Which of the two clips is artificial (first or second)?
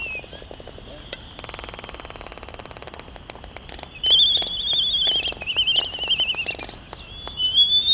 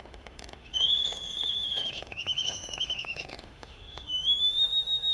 second